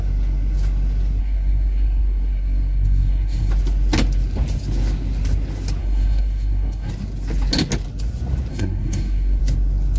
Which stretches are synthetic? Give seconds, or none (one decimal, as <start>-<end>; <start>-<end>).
1.2-3.5; 5.8-6.9; 8.5-9.4